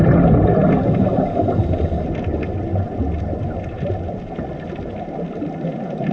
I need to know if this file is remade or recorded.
recorded